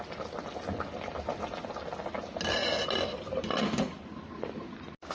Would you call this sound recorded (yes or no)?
yes